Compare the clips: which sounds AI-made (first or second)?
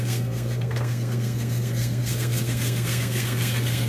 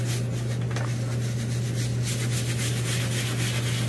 first